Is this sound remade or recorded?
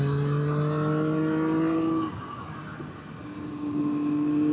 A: recorded